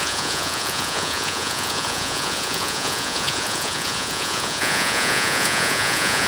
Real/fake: fake